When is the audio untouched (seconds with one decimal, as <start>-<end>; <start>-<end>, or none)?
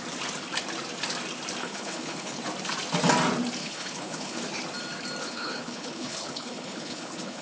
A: 0.0-1.6; 2.4-3.6; 4.4-5.2